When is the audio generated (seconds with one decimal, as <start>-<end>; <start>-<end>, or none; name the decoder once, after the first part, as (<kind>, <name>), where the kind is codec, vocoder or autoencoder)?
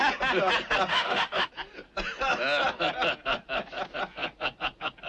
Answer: 0.9-1.5 (autoencoder, DAC-VAE)